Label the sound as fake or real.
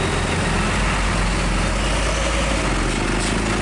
real